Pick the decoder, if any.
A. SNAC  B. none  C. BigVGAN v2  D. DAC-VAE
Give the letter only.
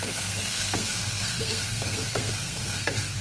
A